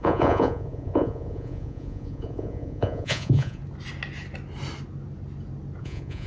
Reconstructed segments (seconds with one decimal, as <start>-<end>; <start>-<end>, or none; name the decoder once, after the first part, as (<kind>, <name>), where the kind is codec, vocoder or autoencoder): 0.0-3.6 (vocoder, Vocos); 5.8-6.3